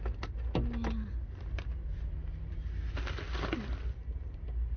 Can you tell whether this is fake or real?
real